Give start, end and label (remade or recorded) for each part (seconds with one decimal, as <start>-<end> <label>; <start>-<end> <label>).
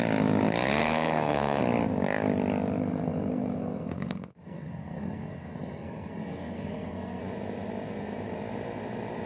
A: 0.0-0.8 recorded; 0.8-1.6 remade; 1.6-2.8 recorded; 2.8-7.2 remade; 7.2-9.3 recorded